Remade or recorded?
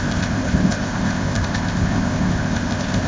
remade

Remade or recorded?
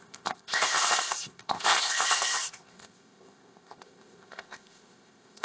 remade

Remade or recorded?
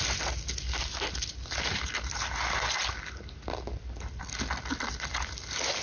recorded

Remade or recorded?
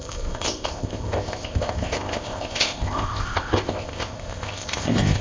remade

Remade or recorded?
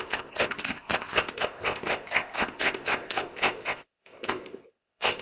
remade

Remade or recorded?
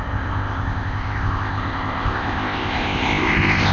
remade